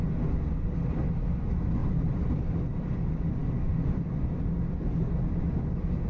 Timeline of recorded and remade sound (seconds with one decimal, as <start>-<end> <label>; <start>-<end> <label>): 0.0-1.8 recorded; 1.8-2.9 remade; 2.9-3.4 recorded; 3.4-4.2 remade; 4.2-6.1 recorded